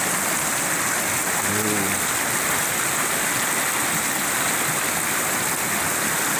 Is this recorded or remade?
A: recorded